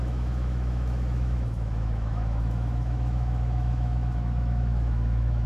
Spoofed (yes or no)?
yes